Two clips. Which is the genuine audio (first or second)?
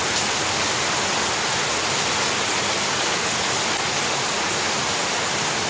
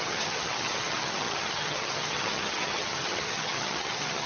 first